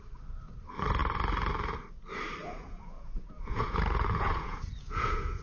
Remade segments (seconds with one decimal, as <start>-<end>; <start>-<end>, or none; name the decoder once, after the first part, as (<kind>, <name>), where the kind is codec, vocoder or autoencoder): 2.4-5.4 (vocoder, Vocos)